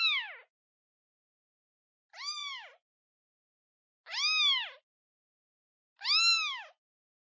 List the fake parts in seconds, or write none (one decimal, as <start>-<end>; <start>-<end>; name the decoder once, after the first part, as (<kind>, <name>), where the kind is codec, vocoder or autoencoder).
none